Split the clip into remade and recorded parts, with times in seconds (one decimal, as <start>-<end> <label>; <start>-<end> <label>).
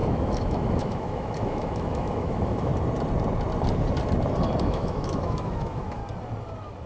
0.0-2.7 remade; 2.7-4.6 recorded; 4.6-6.0 remade; 6.0-6.9 recorded